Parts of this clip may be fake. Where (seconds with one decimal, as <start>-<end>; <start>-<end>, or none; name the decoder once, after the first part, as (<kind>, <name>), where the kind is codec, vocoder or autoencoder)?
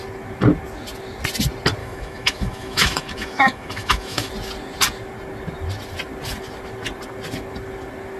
1.8-4.3 (autoencoder, DAC-VAE)